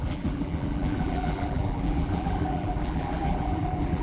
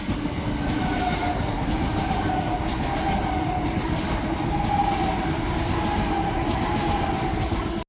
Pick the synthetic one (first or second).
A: first